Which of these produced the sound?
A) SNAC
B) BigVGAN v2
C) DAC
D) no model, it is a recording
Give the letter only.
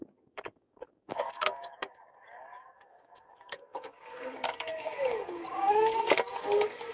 C